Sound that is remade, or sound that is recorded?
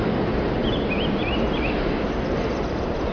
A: recorded